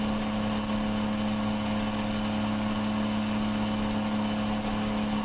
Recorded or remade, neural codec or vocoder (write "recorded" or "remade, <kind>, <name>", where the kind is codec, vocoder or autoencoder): recorded